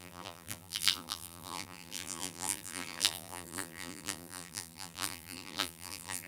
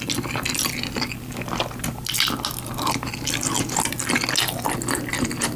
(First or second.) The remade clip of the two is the first